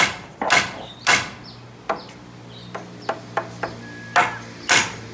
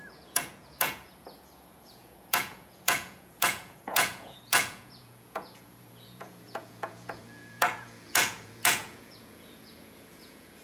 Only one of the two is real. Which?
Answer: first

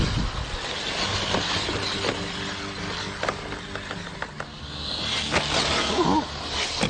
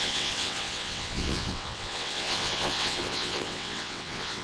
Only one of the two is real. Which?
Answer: first